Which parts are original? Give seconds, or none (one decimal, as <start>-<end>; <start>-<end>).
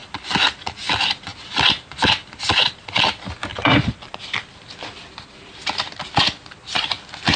0.0-3.5; 4.1-7.4